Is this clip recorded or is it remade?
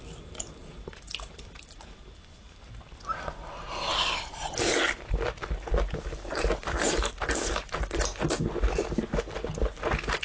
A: recorded